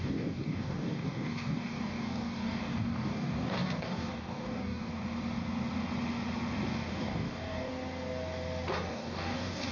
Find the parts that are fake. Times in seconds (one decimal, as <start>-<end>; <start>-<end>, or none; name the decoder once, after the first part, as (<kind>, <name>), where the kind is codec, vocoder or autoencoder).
0.0-4.9 (codec, DAC); 6.9-7.7; 8.9-9.7